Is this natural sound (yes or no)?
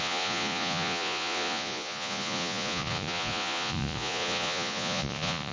no